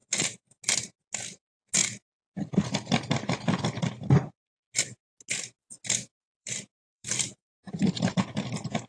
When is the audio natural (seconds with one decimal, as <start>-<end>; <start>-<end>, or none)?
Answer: 0.0-6.4; 8.1-8.9